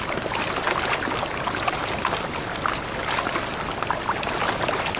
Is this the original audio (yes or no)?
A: yes